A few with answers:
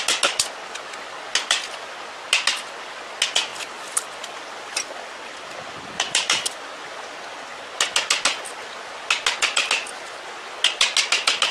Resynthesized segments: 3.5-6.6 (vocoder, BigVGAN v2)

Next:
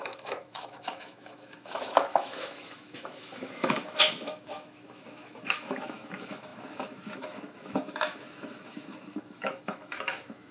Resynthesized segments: 0.0-10.5 (autoencoder, DAC-VAE)

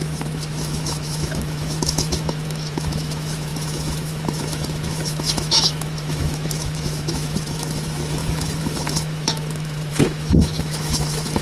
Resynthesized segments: 0.0-11.4 (autoencoder, DAC-VAE)

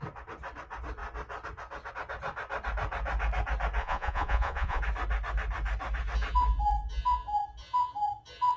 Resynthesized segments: 3.8-4.8 (vocoder, Vocos)

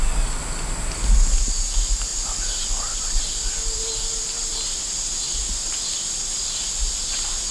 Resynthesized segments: none